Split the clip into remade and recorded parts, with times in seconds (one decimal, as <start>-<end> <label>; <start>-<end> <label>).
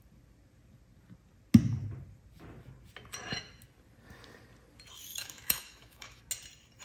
0.0-5.1 recorded; 5.1-6.2 remade; 6.2-6.8 recorded